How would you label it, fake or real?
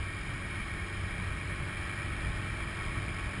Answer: real